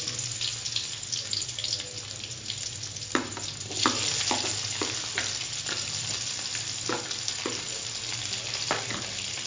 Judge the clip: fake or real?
real